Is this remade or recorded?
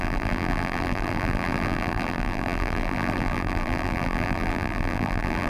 remade